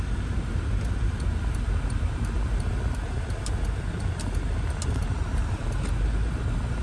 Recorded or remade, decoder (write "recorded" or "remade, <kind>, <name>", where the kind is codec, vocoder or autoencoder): recorded